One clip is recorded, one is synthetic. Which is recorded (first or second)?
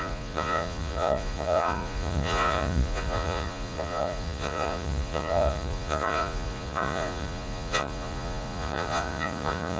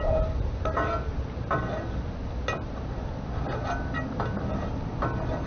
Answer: second